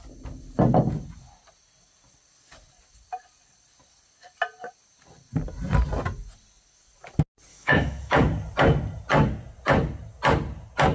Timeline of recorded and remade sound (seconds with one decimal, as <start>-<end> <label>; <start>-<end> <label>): 0.0-7.5 recorded; 7.5-8.2 remade; 8.2-10.9 recorded